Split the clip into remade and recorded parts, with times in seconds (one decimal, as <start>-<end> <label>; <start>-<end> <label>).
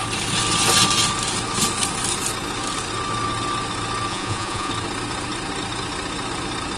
0.0-4.1 recorded; 4.1-4.7 remade; 4.7-6.8 recorded